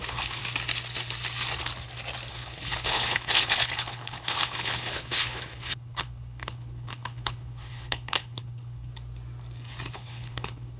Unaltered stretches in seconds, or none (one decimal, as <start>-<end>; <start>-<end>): 0.4-2.3; 8.9-9.9